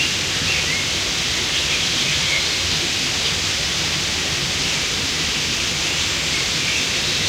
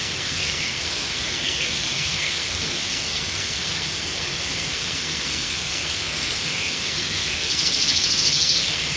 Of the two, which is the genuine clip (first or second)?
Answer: first